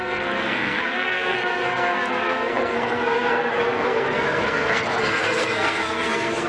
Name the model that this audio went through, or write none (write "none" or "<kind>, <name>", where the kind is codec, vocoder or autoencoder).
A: codec, SNAC